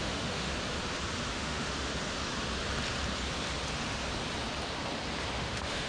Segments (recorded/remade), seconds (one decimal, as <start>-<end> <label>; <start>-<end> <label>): 0.0-0.5 remade; 0.5-1.3 recorded; 1.3-1.9 remade; 1.9-5.4 recorded; 5.4-5.9 remade